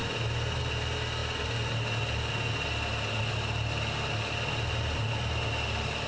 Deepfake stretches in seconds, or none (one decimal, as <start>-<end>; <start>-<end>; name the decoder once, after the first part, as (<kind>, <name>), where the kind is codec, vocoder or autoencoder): none